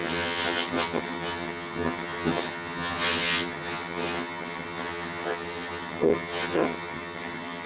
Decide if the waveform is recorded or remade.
remade